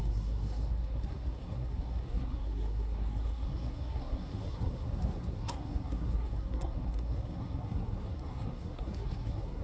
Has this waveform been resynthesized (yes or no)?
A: yes